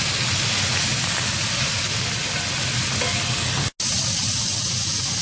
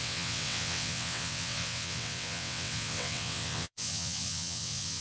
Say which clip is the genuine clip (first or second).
first